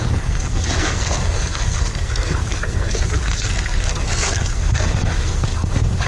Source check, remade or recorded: remade